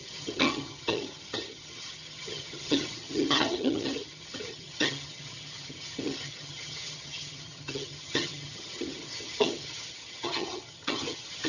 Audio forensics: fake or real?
fake